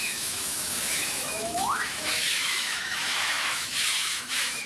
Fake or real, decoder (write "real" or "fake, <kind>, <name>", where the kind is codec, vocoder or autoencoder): fake, autoencoder, DAC-VAE